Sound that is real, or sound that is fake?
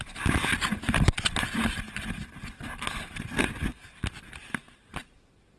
real